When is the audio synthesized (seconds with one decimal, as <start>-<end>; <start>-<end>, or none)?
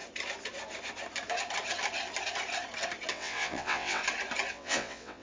3.1-4.0; 4.5-5.2